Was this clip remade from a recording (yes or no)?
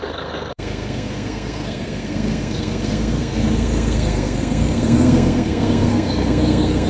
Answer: yes